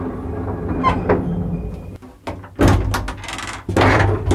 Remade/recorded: recorded